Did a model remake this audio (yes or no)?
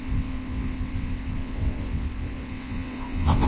yes